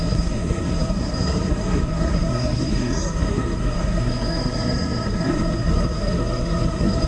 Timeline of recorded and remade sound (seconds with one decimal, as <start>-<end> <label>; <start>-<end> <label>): 0.0-7.1 remade